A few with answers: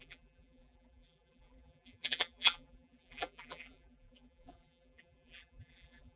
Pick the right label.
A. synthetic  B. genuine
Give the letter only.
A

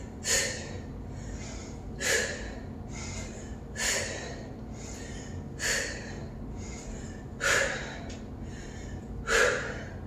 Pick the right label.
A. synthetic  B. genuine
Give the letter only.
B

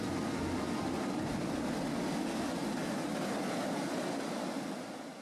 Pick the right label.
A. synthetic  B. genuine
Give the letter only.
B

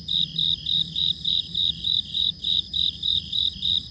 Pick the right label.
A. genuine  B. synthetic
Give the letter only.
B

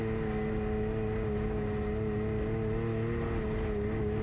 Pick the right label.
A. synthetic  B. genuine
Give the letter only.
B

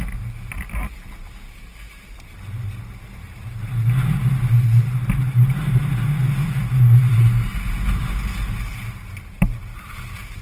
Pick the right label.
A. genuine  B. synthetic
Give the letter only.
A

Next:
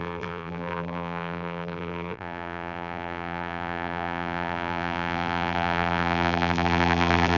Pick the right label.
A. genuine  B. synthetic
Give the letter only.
B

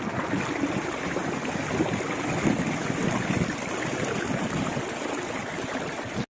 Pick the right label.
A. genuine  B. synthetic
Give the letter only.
A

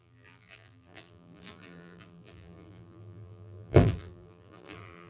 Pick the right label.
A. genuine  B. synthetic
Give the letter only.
B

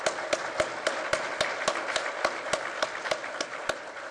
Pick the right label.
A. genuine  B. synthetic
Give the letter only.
A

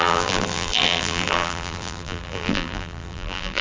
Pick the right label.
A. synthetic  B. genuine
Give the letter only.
A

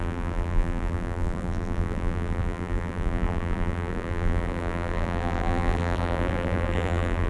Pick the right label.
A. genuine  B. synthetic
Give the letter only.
B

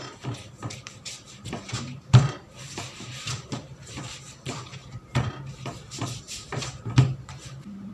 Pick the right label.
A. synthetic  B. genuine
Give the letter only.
A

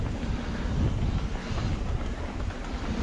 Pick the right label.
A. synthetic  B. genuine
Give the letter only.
B